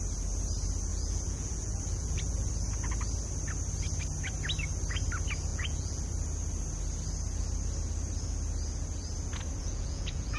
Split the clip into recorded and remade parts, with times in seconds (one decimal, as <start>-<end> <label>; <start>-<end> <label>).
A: 0.0-0.9 recorded; 0.9-2.5 remade; 2.5-5.5 recorded; 5.5-6.0 remade; 6.0-9.6 recorded; 9.6-10.4 remade